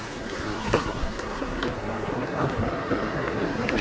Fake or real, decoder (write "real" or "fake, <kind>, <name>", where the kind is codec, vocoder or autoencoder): fake, codec, SNAC